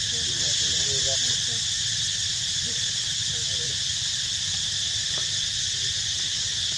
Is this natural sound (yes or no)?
yes